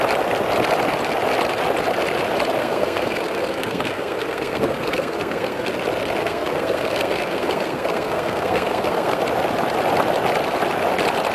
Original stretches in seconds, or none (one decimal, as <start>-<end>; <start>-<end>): 0.0-2.6; 5.7-6.2; 9.2-11.3